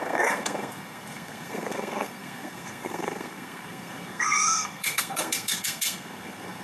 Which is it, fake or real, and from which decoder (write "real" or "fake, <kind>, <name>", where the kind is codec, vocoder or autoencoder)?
fake, codec, SNAC